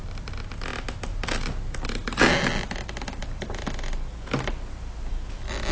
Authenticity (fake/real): real